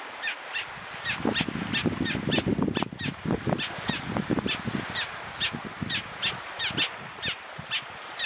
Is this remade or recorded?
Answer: recorded